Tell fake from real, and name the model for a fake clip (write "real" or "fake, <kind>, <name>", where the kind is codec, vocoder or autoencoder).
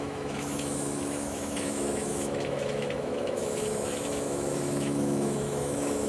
fake, autoencoder, DAC-VAE